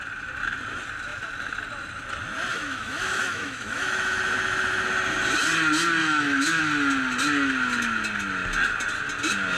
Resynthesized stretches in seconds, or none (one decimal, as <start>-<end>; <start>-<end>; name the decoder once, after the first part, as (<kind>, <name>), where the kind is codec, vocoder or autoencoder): 2.5-4.2 (autoencoder, DAC-VAE); 6.0-6.6